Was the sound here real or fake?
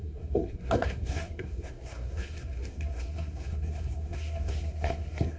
fake